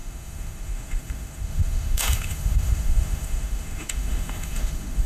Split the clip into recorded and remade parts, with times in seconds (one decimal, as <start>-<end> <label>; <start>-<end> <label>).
0.0-5.1 remade